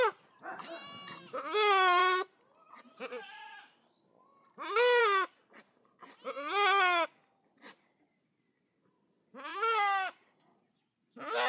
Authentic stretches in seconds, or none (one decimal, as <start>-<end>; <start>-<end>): 0.0-11.5